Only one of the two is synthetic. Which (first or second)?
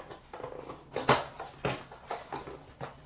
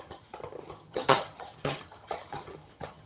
second